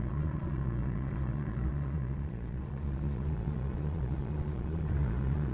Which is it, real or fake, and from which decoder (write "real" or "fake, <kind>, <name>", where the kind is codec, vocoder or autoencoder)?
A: fake, vocoder, Vocos